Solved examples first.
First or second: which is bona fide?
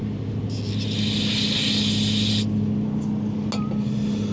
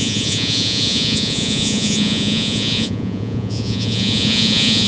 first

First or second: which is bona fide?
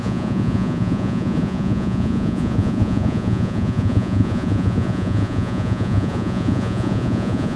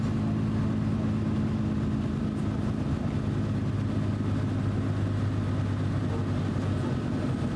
second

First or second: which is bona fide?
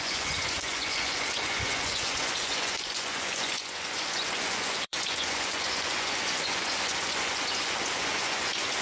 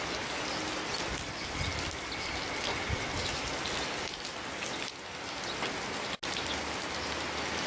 second